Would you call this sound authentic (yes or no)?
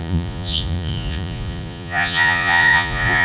no